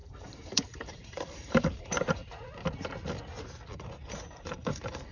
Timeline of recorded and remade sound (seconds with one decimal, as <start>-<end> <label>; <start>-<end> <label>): 0.0-2.2 remade; 2.2-3.7 recorded; 3.7-5.1 remade